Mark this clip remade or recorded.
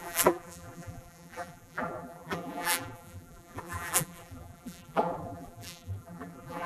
remade